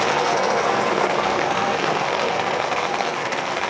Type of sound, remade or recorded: remade